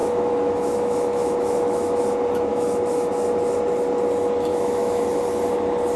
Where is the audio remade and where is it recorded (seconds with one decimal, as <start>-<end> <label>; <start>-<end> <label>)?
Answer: 0.0-2.0 remade; 2.0-2.5 recorded; 2.5-3.1 remade; 3.1-4.5 recorded; 4.5-5.0 remade; 5.0-6.0 recorded